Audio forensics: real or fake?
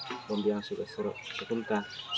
real